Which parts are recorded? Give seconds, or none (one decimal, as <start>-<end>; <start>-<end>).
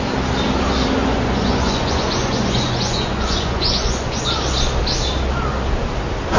0.0-1.0; 4.3-6.4